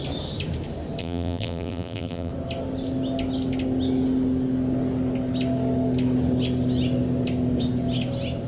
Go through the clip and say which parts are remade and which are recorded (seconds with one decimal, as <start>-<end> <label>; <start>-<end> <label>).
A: 0.0-1.0 recorded; 1.0-2.3 remade; 2.3-8.5 recorded